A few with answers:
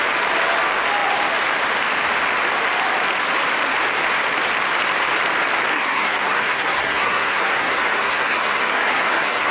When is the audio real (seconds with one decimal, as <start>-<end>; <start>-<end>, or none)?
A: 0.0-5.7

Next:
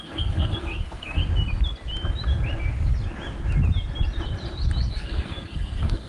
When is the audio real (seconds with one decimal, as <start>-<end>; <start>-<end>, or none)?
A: 1.2-4.9

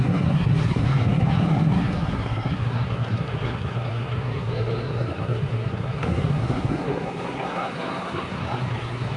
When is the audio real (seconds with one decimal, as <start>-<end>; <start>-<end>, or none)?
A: none

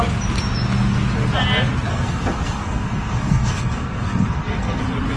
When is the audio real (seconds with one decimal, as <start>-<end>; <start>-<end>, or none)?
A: 0.0-1.9; 4.8-5.2

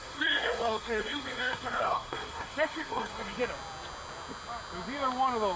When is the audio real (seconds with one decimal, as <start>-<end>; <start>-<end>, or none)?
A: 3.4-5.6

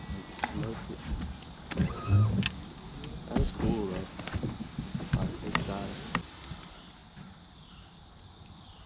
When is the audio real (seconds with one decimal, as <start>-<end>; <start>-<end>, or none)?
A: 0.0-8.9